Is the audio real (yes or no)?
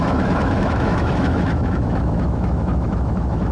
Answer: no